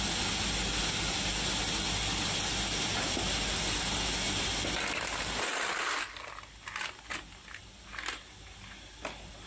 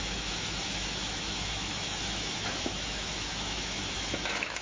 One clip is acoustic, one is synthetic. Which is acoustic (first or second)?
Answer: first